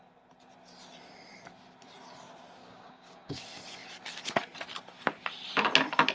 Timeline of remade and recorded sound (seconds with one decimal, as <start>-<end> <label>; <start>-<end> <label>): 0.0-2.6 recorded; 2.6-3.4 remade; 3.4-6.1 recorded